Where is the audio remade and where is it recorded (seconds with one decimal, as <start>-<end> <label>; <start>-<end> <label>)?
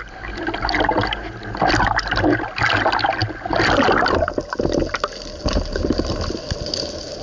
0.0-7.2 recorded